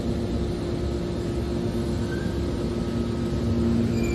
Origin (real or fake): real